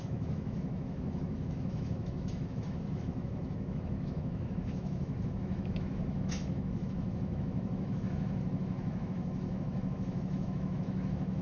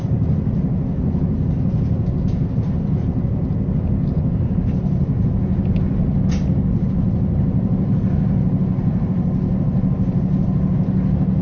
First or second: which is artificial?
first